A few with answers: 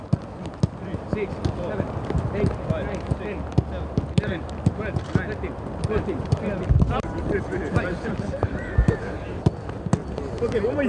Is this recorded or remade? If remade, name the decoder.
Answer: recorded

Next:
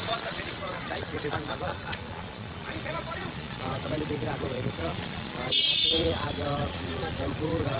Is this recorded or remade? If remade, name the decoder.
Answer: remade, vocoder, Vocos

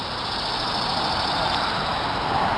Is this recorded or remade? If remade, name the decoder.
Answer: recorded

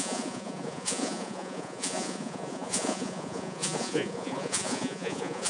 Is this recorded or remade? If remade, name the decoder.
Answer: remade, vocoder, Vocos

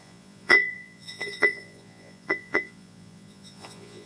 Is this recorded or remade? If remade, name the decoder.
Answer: remade, vocoder, Vocos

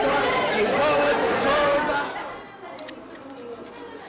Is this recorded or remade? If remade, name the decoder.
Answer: recorded